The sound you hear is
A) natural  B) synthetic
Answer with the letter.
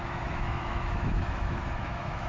B